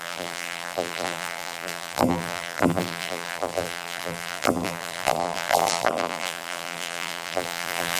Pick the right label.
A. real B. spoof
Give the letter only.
B